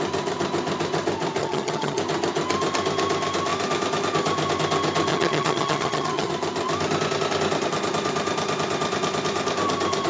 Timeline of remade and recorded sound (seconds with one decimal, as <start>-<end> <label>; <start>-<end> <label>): 0.0-1.4 recorded; 1.4-2.0 remade; 2.0-5.1 recorded; 5.1-6.3 remade; 6.3-10.1 recorded